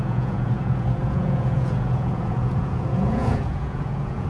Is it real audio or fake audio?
fake